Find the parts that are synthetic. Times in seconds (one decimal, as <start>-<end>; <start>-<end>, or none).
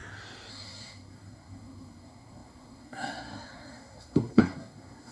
0.5-5.1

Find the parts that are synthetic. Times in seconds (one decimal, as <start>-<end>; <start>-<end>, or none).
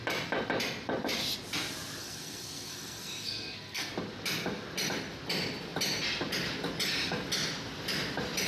2.0-3.9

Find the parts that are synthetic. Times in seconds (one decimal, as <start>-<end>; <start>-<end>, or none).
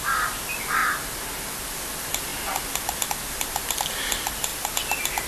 0.0-0.8; 1.7-2.3; 3.3-4.5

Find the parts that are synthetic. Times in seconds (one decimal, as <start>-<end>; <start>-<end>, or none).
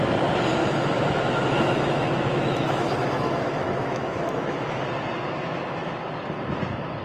0.6-4.8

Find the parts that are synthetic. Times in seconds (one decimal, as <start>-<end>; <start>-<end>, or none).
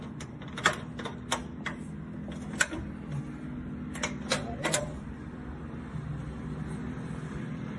none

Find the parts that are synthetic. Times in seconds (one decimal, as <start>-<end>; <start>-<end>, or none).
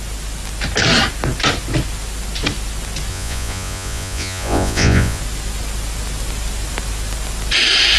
3.1-5.2